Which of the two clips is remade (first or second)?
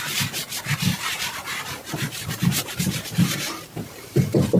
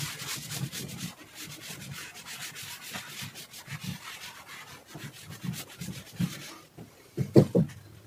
first